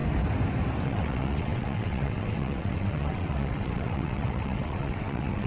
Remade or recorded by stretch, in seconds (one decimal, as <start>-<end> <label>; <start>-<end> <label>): 0.0-0.8 recorded; 0.8-5.5 remade

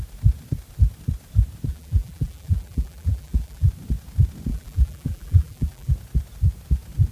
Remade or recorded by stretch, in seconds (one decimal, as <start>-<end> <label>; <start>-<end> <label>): 0.0-1.7 recorded; 1.7-3.7 remade; 3.7-4.5 recorded; 4.5-5.9 remade; 5.9-7.1 recorded

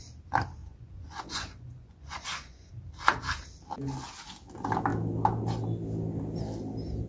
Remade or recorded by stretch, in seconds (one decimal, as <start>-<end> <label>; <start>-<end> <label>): 0.0-0.6 recorded; 0.6-2.7 remade; 2.7-7.1 recorded

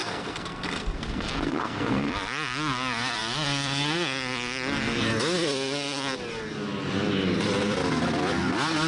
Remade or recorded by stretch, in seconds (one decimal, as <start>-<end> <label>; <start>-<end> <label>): 0.0-2.1 remade; 2.1-8.9 recorded

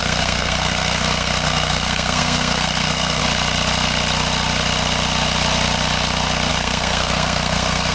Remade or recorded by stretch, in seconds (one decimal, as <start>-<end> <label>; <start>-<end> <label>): 0.0-3.2 remade; 3.2-6.5 recorded; 6.5-7.9 remade

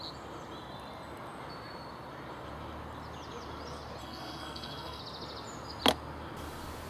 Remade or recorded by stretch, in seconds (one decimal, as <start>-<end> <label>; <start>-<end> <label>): 0.0-4.0 recorded; 4.0-5.0 remade; 5.0-6.9 recorded